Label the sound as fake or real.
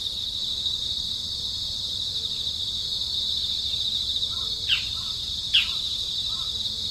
real